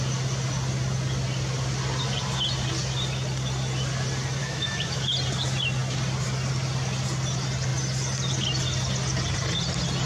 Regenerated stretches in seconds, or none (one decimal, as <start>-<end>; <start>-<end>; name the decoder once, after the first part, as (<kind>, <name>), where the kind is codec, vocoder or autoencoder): 4.4-5.1 (autoencoder, DAC-VAE)